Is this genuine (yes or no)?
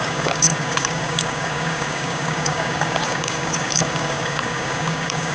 no